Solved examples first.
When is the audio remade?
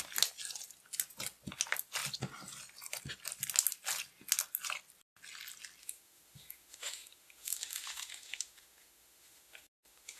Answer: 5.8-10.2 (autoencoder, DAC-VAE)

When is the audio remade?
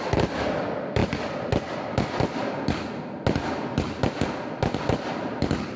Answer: none